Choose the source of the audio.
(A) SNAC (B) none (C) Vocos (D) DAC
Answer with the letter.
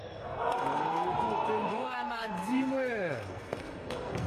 A